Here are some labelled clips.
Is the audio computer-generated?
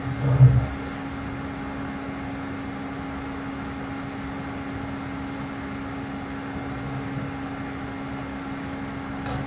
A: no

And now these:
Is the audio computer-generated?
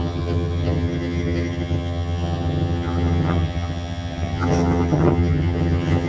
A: yes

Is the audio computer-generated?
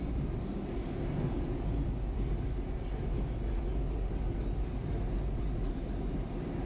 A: no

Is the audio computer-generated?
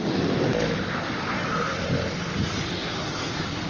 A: no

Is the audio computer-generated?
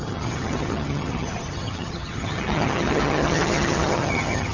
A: yes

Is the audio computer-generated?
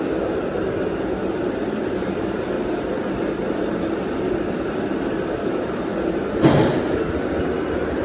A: no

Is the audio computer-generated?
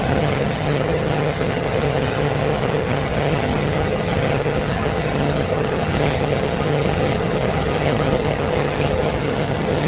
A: yes